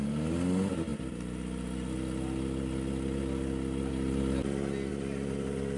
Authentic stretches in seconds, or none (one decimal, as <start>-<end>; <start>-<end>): 0.0-5.8